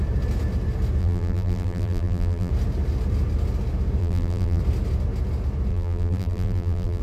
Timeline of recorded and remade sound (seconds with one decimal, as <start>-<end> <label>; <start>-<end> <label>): 0.0-1.0 recorded; 1.0-2.5 remade; 2.5-4.0 recorded; 4.0-4.6 remade; 4.6-5.7 recorded; 5.7-7.0 remade